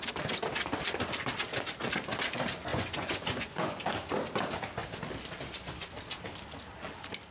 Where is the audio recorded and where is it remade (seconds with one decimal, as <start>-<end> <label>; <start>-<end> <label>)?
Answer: 0.0-2.7 recorded; 2.7-3.8 remade; 3.8-7.3 recorded